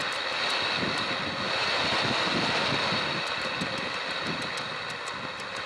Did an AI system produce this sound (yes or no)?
no